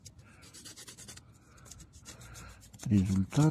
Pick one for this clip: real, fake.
real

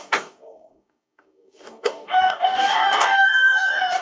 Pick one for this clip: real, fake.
fake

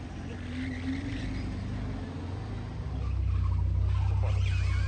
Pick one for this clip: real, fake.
real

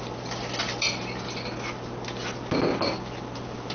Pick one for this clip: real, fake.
real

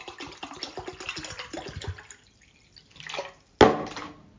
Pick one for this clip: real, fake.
real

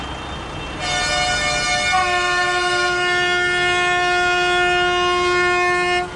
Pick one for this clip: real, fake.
real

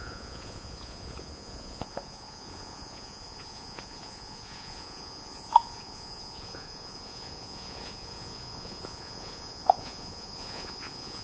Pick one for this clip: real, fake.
fake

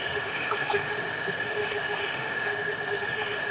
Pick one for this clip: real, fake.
fake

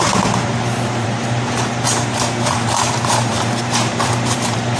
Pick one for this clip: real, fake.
fake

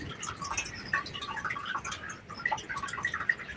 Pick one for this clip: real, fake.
real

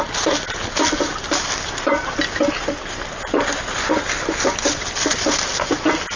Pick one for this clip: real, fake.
real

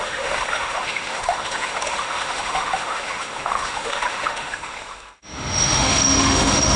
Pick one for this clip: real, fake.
fake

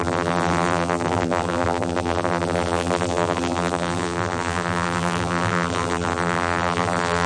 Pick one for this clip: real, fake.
fake